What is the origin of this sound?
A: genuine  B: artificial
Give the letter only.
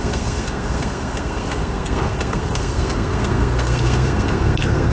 B